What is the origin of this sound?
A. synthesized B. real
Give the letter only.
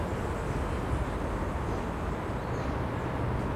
B